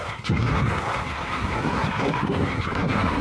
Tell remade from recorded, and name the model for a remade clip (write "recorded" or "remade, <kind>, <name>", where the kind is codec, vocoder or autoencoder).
remade, codec, SNAC